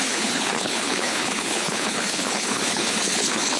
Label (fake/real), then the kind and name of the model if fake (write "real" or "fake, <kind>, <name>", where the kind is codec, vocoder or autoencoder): fake, codec, HILCodec